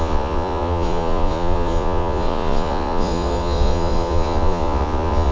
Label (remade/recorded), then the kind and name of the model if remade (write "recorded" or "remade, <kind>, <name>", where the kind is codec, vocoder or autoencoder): remade, vocoder, Vocos